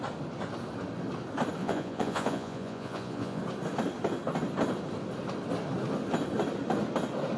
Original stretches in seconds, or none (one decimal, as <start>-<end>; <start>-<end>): 0.0-1.6; 3.4-7.4